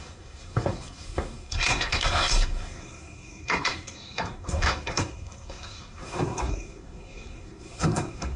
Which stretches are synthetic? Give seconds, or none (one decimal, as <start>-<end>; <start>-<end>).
0.0-8.4